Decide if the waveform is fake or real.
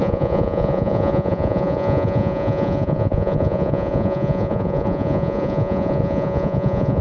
fake